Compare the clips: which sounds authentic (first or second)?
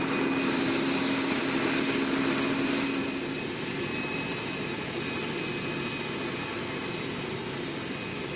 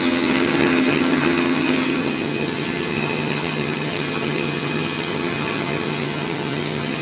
first